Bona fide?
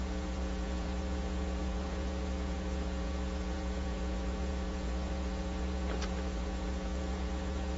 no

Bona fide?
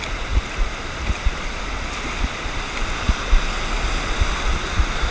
yes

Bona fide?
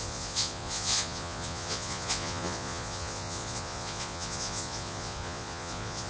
no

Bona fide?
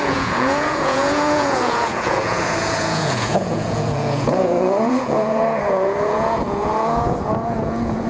no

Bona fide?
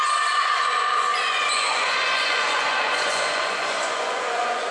no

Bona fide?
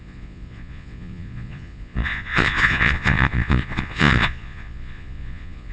no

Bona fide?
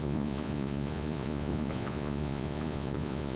no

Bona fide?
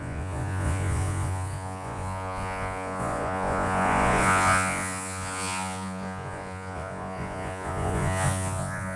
no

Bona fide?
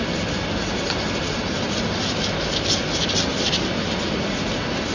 yes